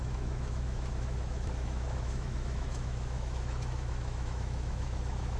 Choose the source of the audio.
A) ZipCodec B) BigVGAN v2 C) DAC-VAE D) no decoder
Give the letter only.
C